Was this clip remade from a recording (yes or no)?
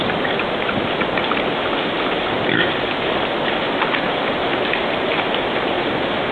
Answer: no